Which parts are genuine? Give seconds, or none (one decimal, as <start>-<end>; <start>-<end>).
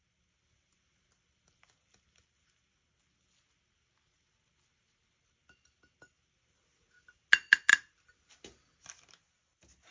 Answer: 0.0-9.9